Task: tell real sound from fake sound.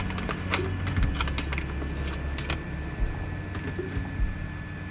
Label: real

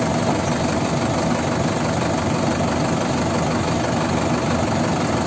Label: real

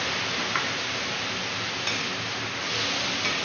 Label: real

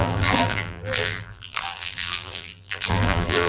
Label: fake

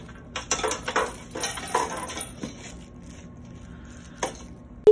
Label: real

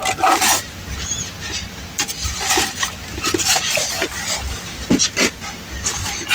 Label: real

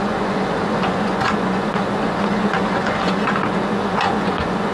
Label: fake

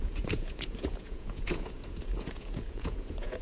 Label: fake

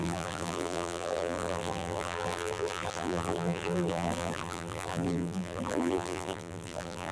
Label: fake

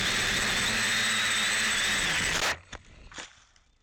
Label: real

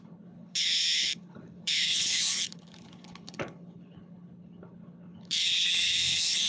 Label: fake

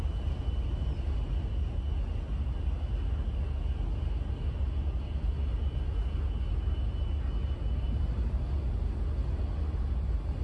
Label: real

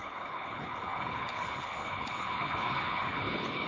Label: fake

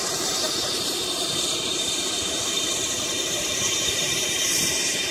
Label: fake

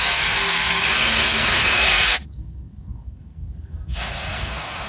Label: fake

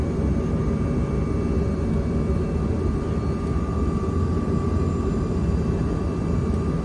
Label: real